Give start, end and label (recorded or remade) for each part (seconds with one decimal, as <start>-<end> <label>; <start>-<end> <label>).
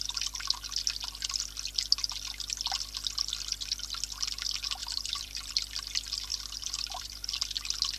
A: 0.0-4.8 recorded; 4.8-5.5 remade; 5.5-6.3 recorded; 6.3-7.4 remade; 7.4-8.0 recorded